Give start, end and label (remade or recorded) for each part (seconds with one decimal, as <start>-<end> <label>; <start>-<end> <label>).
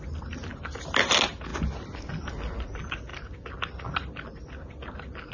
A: 0.0-5.3 recorded